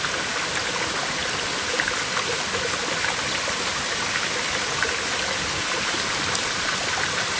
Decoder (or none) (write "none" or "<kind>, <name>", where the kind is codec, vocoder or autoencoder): none